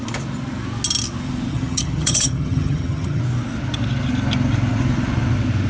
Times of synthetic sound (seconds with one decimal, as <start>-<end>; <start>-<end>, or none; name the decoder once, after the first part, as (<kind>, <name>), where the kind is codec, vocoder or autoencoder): 1.5-3.2 (vocoder, HiFi-GAN)